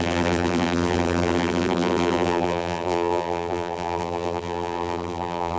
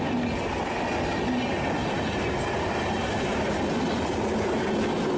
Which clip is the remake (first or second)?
first